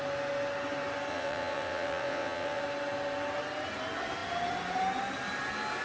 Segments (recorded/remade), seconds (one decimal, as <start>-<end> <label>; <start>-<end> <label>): 0.0-1.1 recorded; 1.1-2.6 remade; 2.6-5.8 recorded